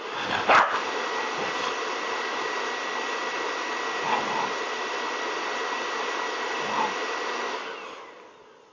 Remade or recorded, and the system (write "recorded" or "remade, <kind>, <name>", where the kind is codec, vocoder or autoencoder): recorded